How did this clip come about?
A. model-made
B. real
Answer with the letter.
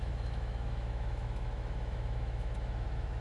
A